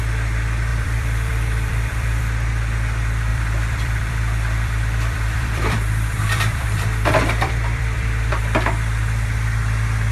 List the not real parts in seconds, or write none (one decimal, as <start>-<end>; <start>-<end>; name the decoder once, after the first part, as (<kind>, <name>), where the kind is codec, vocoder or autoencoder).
0.7-2.2 (vocoder, BigVGAN v2); 3.3-8.4